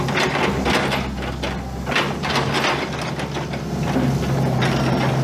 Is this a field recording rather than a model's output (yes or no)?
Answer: yes